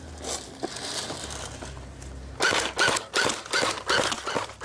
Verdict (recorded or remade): recorded